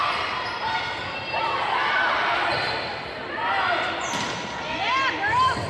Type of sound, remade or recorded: recorded